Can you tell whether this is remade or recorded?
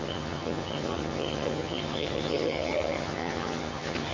remade